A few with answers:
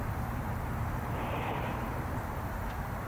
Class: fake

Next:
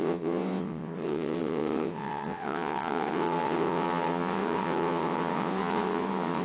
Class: fake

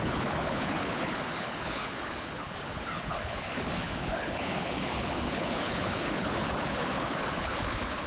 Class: fake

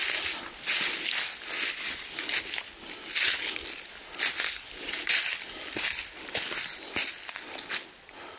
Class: real